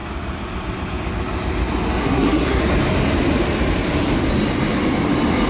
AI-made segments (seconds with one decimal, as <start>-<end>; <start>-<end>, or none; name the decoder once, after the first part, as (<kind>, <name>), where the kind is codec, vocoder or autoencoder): 2.0-2.6 (codec, SNAC)